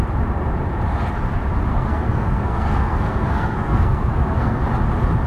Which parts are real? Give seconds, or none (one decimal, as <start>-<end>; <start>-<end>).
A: 0.0-1.7; 4.6-5.3